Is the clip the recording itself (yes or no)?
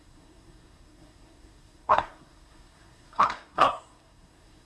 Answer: no